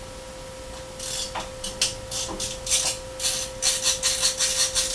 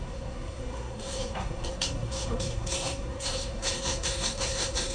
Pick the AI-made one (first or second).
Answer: second